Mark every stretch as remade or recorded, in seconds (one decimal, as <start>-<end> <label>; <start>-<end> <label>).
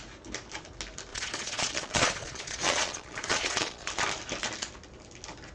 0.0-1.1 recorded; 1.1-3.9 remade; 3.9-5.5 recorded